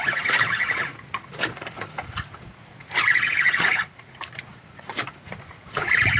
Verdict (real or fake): fake